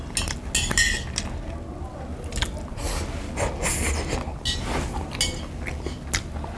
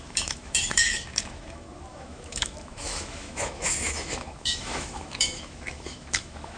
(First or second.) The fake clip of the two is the second